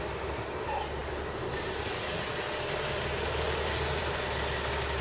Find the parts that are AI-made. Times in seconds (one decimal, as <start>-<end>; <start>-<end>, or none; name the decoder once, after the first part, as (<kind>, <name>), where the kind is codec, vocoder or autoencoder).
none

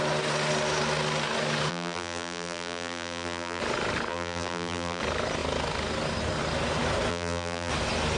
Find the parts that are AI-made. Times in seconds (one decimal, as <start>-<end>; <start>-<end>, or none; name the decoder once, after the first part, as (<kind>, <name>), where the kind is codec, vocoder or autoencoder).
1.7-3.6 (vocoder, BigVGAN v2); 4.1-5.0; 7.1-7.7

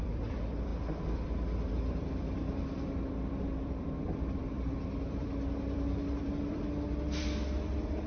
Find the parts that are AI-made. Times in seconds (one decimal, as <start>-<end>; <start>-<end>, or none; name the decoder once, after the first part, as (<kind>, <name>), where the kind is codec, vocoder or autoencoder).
0.0-0.7 (vocoder, BigVGAN v2); 1.7-8.1